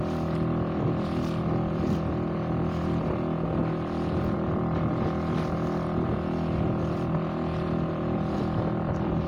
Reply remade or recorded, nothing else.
recorded